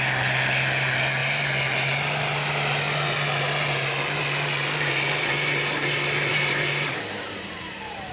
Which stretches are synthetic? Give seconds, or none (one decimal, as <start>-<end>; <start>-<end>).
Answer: 6.3-8.1